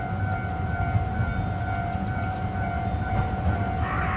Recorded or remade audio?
recorded